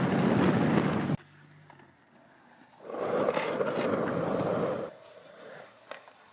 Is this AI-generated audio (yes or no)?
no